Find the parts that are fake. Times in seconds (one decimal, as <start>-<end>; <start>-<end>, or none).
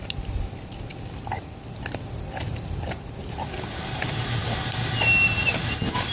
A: none